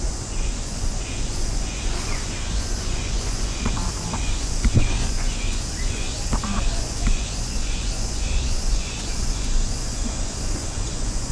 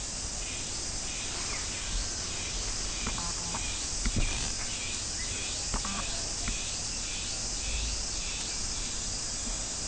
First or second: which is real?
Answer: second